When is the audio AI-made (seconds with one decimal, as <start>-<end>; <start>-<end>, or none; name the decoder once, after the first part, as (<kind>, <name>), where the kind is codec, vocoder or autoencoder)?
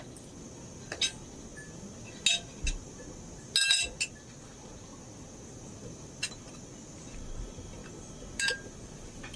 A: none